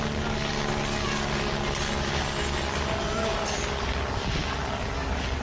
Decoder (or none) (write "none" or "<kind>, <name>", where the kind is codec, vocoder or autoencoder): none